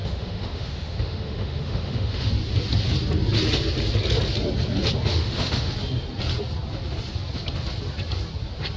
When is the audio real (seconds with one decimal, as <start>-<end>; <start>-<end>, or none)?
2.3-5.1; 5.7-8.8